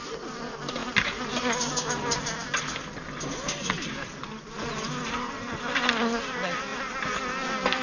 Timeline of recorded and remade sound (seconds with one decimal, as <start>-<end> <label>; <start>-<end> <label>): 0.0-7.8 recorded